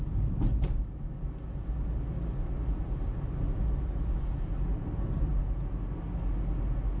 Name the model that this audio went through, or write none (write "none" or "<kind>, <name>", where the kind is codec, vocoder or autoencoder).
none